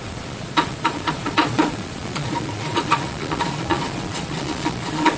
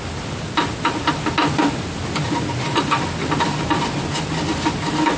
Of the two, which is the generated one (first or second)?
first